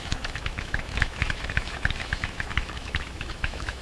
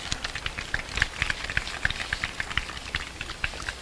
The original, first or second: second